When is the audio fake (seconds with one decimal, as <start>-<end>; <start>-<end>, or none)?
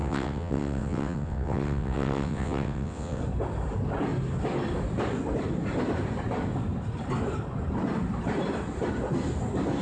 0.0-3.2